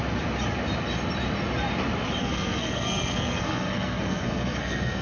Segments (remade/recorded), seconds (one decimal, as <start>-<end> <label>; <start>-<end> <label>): 0.0-2.2 recorded; 2.2-5.0 remade